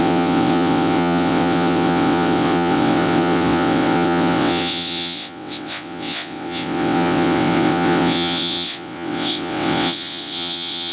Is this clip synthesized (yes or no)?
yes